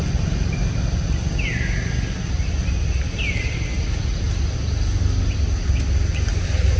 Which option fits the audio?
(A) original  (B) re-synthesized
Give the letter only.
A